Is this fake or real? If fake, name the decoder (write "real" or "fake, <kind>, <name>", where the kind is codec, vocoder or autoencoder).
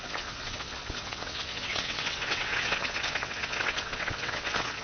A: fake, vocoder, WaveNeXt